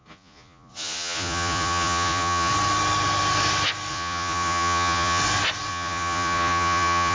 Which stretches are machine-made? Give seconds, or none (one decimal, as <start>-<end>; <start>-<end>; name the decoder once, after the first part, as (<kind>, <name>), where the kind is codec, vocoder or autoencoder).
0.0-2.5 (vocoder, Vocos); 3.9-5.2; 5.7-7.1